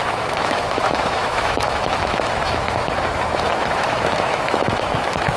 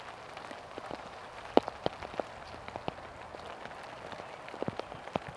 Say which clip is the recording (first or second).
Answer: second